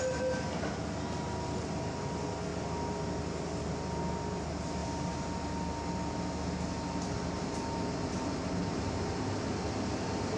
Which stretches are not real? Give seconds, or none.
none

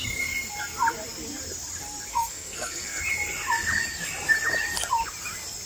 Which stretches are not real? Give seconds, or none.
2.1-3.0 (codec, SNAC)

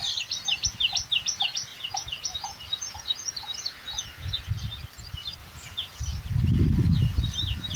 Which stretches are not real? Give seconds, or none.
1.7-4.5 (vocoder, Vocos); 5.4-6.0

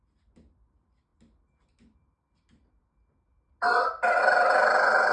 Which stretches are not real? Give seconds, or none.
none

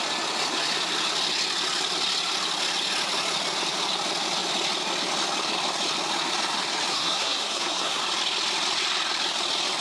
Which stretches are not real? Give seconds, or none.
6.9-8.0 (codec, SNAC)

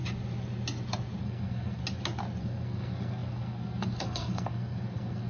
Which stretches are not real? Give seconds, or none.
1.2-1.8 (codec, SNAC); 2.4-5.3